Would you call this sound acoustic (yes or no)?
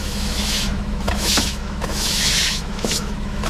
no